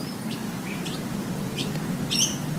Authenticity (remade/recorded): remade